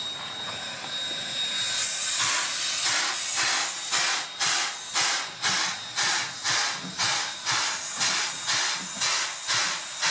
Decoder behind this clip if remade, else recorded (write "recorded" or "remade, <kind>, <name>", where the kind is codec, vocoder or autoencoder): recorded